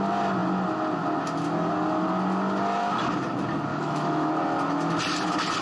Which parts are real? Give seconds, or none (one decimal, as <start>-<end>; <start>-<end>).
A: 0.0-3.7; 4.3-5.6